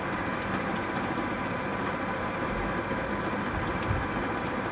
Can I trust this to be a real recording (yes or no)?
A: no